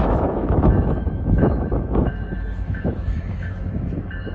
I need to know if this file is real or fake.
fake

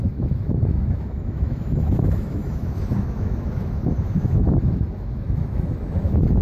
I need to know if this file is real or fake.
fake